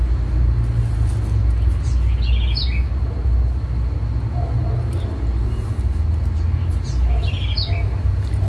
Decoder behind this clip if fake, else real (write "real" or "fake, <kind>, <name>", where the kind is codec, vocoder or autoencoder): real